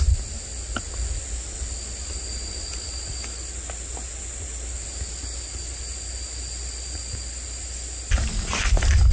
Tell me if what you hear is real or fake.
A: real